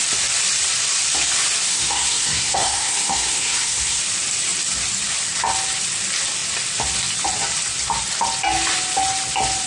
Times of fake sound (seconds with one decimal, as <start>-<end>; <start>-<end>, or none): 1.7-4.0